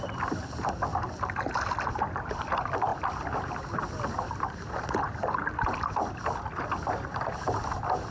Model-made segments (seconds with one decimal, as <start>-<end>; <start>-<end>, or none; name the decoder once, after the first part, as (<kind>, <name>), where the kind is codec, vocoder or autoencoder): 0.0-0.9 (vocoder, BigVGAN v2); 1.9-8.1